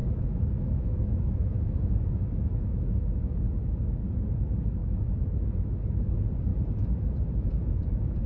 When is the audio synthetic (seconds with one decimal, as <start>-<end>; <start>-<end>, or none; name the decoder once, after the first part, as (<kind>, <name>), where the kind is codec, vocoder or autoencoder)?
0.0-3.6 (autoencoder, DAC-VAE); 4.8-6.1; 6.5-8.3